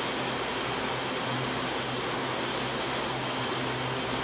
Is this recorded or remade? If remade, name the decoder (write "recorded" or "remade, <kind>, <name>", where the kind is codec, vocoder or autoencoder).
recorded